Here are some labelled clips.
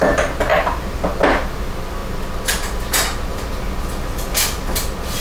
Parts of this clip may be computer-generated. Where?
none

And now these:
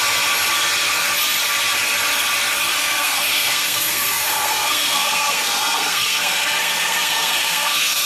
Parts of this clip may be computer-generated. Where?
2.8-8.1 (codec, SNAC)

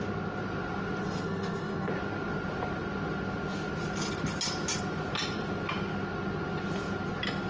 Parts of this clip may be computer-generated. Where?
1.0-1.9 (codec, SNAC)

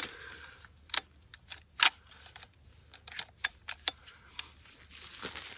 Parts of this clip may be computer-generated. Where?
none

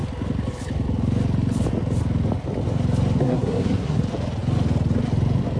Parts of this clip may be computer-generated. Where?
3.2-4.0 (codec, SNAC)

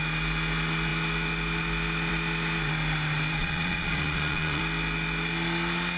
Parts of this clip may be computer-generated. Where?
3.4-4.6 (vocoder, Vocos)